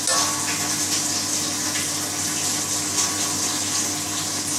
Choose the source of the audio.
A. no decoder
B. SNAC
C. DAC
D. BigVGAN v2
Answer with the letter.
A